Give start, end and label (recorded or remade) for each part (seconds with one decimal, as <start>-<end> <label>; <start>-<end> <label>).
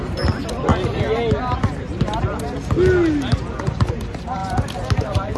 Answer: 0.0-0.7 remade; 0.7-3.9 recorded; 3.9-4.4 remade; 4.4-4.9 recorded; 4.9-5.4 remade